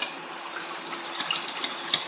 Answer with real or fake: real